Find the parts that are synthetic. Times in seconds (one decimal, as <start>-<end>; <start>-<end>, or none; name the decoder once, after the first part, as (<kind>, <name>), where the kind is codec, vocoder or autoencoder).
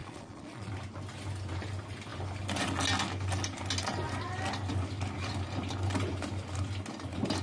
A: 0.0-0.7 (vocoder, Vocos)